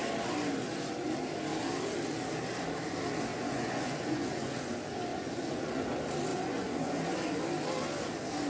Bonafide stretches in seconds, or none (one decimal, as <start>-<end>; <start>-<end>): 0.0-3.3; 4.6-5.1; 5.8-6.3; 7.0-8.5